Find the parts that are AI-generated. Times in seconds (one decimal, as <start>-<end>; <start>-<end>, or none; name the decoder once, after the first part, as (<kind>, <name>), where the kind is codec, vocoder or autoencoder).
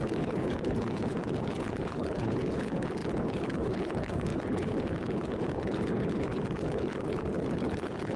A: 0.0-8.2 (codec, HILCodec)